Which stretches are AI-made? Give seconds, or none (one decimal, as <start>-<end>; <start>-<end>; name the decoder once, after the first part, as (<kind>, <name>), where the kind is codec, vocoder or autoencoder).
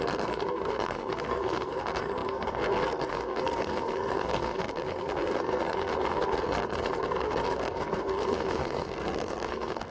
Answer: 0.0-9.9 (codec, SNAC)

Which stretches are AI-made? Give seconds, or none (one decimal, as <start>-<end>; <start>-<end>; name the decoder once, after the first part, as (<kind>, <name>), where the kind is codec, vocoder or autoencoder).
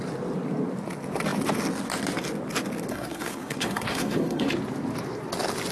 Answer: 2.9-4.5 (codec, SNAC)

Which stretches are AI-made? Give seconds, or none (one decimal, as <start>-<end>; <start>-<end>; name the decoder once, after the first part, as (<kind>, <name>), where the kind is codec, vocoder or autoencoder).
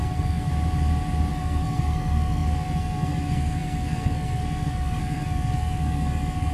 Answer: 0.0-0.5 (codec, SNAC); 1.3-6.5